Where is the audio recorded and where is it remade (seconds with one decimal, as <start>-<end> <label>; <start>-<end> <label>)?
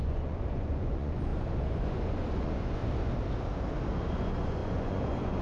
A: 0.0-2.8 remade; 2.8-4.1 recorded; 4.1-5.4 remade